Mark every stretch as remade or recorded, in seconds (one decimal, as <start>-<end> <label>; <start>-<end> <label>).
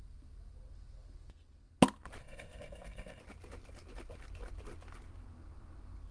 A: 0.0-2.2 recorded; 2.2-3.2 remade; 3.2-6.1 recorded